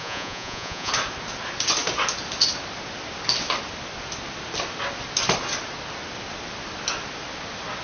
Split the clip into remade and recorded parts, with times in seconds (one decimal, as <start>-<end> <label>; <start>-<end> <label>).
0.0-0.9 remade; 0.9-7.8 recorded

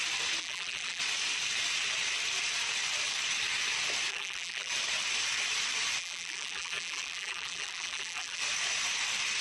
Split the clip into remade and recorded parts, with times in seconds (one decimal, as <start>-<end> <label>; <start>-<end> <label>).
0.0-0.4 recorded; 0.4-1.0 remade; 1.0-4.1 recorded; 4.1-4.7 remade; 4.7-6.0 recorded; 6.0-8.4 remade; 8.4-9.4 recorded

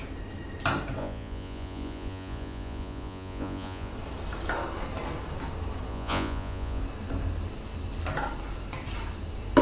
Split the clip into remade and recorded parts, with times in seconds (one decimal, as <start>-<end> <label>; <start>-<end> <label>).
0.0-1.0 recorded; 1.0-3.9 remade; 3.9-5.9 recorded; 5.9-6.8 remade; 6.8-9.6 recorded

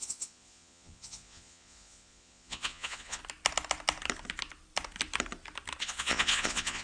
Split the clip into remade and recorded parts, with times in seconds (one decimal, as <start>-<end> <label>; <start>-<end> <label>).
0.0-3.2 remade; 3.2-5.8 recorded; 5.8-6.8 remade

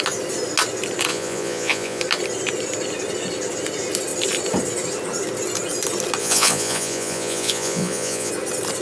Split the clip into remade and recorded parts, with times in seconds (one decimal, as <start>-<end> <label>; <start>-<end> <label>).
0.0-1.1 recorded; 1.1-2.0 remade; 2.0-6.2 recorded; 6.2-8.3 remade; 8.3-8.8 recorded

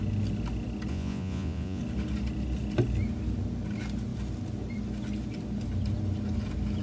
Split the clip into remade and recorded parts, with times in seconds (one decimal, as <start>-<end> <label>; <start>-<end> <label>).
0.0-0.9 recorded; 0.9-1.8 remade; 1.8-6.8 recorded